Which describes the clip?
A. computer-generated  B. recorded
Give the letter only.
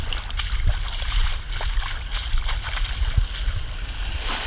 B